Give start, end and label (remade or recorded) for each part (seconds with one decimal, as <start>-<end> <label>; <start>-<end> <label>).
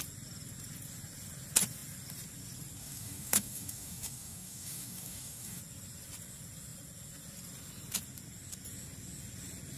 0.0-2.8 recorded; 2.8-5.6 remade; 5.6-9.8 recorded